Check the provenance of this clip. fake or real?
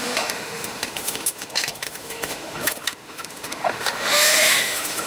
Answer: fake